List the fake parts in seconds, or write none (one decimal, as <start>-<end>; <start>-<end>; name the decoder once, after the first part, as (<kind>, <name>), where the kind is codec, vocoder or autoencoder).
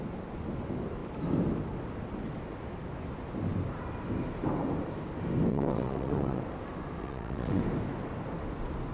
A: 5.5-6.4 (vocoder, WaveNeXt); 7.0-7.6